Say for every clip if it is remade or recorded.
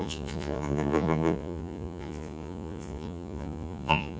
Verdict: remade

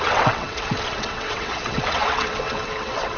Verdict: remade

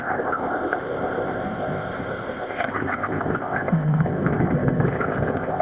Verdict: remade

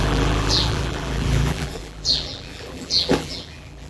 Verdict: remade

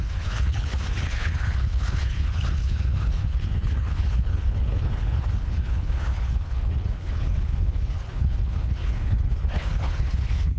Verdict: remade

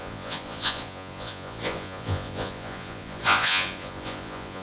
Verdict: remade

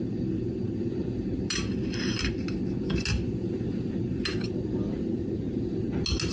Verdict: recorded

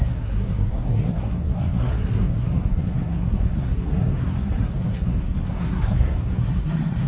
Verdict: remade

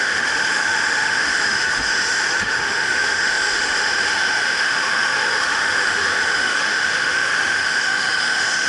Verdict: remade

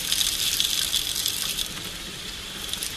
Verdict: recorded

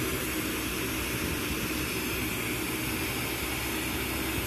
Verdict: recorded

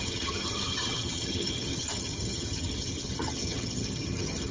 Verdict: remade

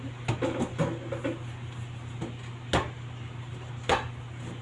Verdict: recorded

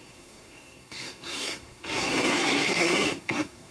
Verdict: remade